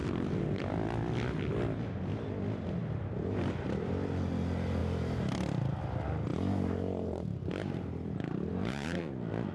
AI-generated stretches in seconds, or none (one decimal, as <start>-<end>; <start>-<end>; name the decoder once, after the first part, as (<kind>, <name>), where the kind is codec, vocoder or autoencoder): 0.0-0.6 (vocoder, BigVGAN v2); 2.8-3.9; 4.8-5.8; 6.3-9.0